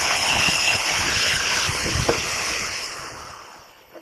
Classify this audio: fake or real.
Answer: fake